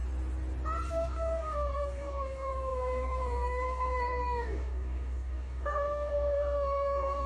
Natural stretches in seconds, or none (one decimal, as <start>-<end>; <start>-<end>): 0.0-0.9